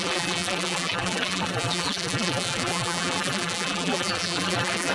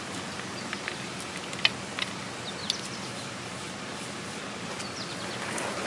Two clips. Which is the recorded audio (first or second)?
second